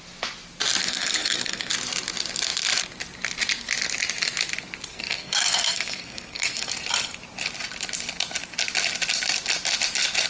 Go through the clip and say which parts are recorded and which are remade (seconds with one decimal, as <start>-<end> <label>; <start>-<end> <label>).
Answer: 0.0-0.8 recorded; 0.8-1.7 remade; 1.7-4.9 recorded; 4.9-6.7 remade; 6.7-10.3 recorded